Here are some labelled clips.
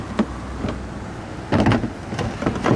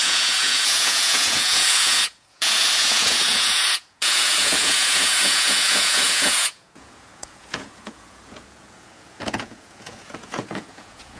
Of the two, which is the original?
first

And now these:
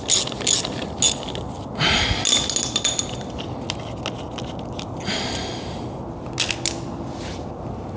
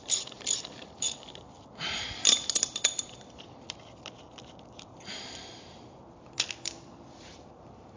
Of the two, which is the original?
first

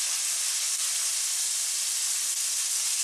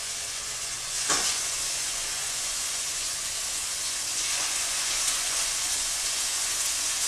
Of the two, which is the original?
first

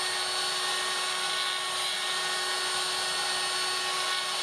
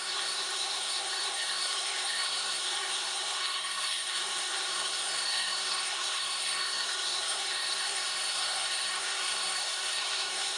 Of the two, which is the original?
first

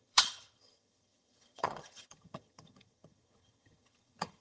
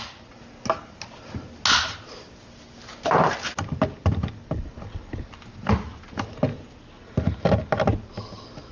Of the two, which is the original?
second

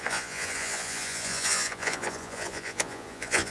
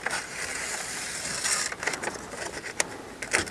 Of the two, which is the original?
second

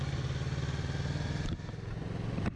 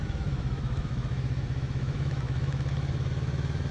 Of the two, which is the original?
first